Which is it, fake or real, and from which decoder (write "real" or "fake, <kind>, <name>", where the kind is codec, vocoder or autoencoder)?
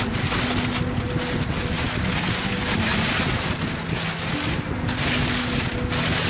real